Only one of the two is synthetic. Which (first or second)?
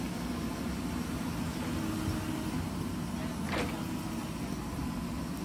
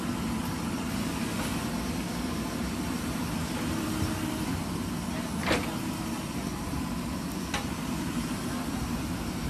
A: second